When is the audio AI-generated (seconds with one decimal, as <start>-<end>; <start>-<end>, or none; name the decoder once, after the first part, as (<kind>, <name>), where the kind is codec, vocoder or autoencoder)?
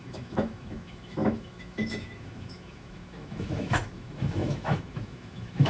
0.0-5.7 (autoencoder, DAC-VAE)